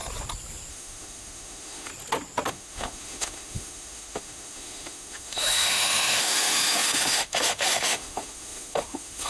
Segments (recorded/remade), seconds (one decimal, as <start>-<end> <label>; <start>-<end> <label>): 0.0-0.7 recorded; 0.7-1.9 remade; 1.9-2.5 recorded; 2.5-9.3 remade